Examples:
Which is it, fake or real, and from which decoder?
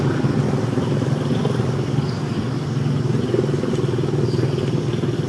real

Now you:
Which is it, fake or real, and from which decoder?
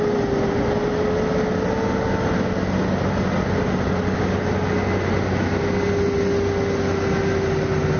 real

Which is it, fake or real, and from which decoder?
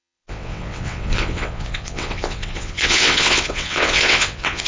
fake, vocoder, WaveNeXt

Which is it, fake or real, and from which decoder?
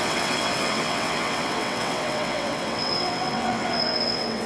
fake, vocoder, WaveNeXt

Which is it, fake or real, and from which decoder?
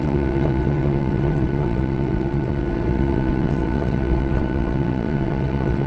fake, vocoder, WaveNeXt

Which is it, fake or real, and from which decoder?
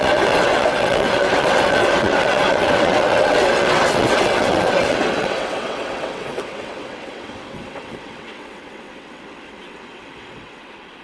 fake, vocoder, WaveNeXt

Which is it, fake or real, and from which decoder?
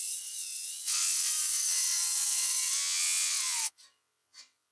fake, vocoder, WaveNeXt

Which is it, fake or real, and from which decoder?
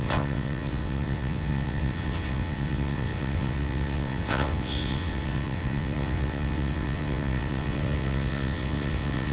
fake, vocoder, WaveNeXt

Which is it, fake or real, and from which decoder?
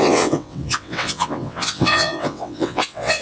fake, vocoder, WaveNeXt